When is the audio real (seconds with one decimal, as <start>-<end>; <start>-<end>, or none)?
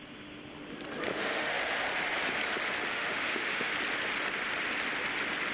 0.0-1.1; 1.6-2.9; 3.7-5.5